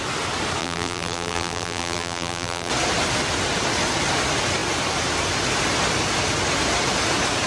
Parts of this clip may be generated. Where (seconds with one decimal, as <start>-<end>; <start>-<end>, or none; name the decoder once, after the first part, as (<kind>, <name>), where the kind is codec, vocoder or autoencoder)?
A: 0.6-2.7 (vocoder, BigVGAN v2)

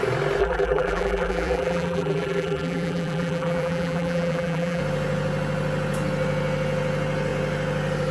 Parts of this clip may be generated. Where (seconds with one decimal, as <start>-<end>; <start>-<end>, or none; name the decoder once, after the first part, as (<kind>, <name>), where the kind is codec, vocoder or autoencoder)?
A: 0.4-4.8 (vocoder, BigVGAN v2)

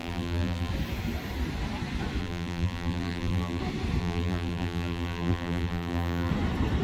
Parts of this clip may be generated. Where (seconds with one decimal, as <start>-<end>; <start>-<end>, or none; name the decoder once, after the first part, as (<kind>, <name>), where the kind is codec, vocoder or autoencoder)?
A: 0.0-0.7 (vocoder, BigVGAN v2); 2.2-3.6; 4.0-6.3